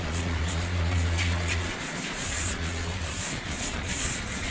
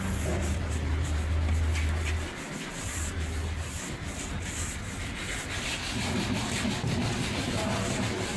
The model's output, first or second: first